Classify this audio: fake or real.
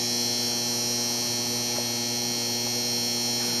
real